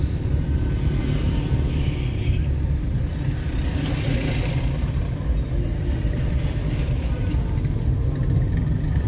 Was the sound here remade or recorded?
recorded